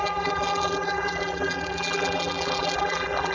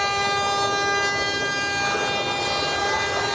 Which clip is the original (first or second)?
second